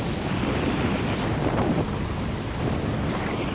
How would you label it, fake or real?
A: real